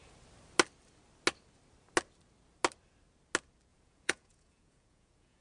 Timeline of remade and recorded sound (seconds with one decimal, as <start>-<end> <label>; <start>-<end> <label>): 0.0-3.7 recorded; 3.7-5.4 remade